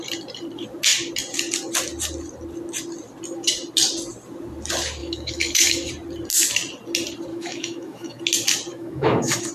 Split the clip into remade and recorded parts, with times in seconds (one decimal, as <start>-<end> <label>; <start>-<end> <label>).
0.0-5.0 recorded; 5.0-5.9 remade; 5.9-7.3 recorded; 7.3-8.2 remade; 8.2-8.7 recorded; 8.7-9.5 remade